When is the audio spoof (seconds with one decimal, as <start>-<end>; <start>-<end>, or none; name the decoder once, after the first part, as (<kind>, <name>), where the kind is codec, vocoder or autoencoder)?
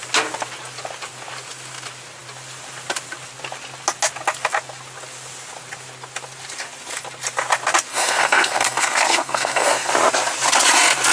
7.9-9.9 (codec, SNAC)